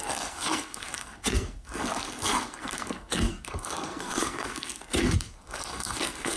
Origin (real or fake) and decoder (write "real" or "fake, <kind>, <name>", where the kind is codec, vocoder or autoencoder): fake, codec, SNAC